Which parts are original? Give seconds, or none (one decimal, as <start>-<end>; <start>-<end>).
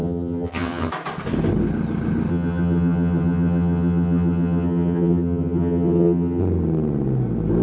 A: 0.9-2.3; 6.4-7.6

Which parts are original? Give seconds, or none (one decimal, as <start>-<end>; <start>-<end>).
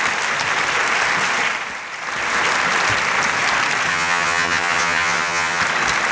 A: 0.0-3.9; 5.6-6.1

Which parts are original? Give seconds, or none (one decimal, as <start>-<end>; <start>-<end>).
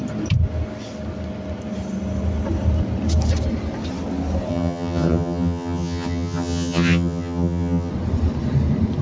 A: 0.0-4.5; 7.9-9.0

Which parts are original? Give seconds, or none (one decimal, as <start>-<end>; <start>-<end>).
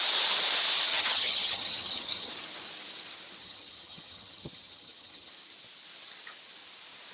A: 0.0-0.9; 2.3-3.4; 5.3-7.1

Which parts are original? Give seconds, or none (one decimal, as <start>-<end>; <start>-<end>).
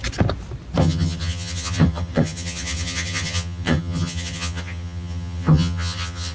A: 0.0-0.8